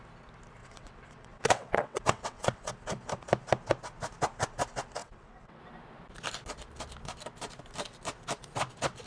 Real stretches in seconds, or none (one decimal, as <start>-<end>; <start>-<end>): 0.0-0.6; 2.7-5.0; 5.6-9.1